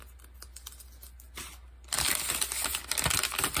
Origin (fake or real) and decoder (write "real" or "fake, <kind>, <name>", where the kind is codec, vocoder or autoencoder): real